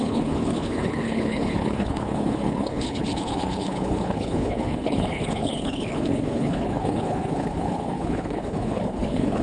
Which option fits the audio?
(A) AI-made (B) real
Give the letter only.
A